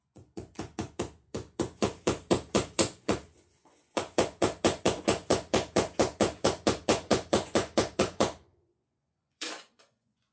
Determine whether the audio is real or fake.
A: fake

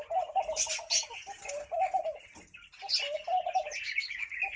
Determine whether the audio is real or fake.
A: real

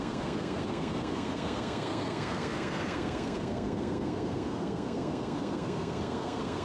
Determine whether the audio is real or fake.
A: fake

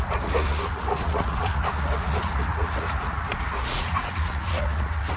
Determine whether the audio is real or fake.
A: fake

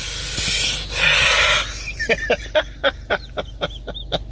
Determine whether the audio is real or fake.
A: real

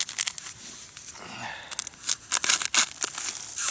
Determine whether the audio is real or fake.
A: real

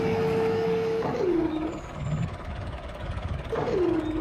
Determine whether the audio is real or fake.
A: fake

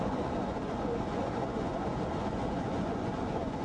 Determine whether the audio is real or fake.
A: fake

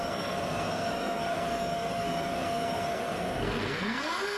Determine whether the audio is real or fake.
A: fake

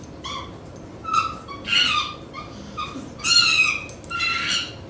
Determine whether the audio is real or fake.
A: real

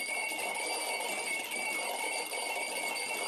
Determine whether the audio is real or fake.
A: real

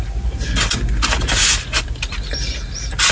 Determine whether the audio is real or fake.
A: real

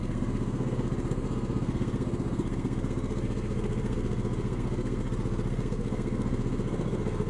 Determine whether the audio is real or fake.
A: fake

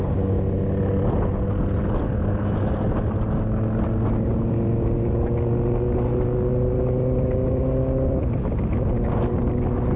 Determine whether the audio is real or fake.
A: real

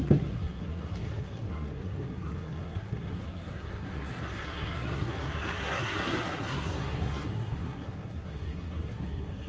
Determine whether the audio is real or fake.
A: fake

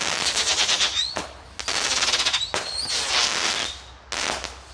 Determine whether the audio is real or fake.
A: real